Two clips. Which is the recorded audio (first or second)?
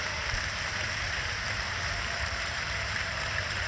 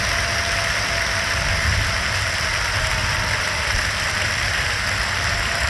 second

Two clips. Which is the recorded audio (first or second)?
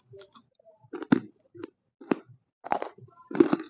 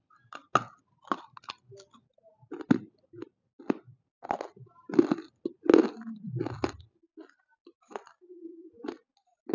second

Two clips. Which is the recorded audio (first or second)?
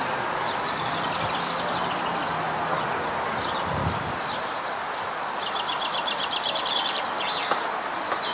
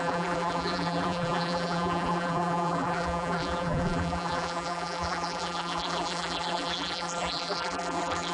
first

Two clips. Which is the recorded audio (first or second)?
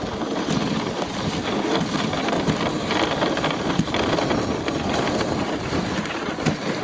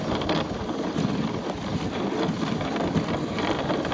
first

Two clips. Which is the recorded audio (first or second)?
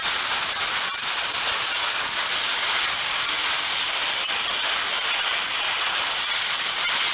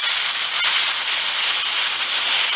second